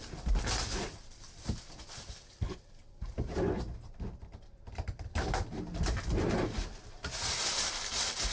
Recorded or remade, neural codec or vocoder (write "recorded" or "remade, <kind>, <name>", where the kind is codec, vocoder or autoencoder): recorded